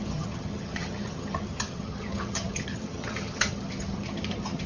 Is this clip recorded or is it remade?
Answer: remade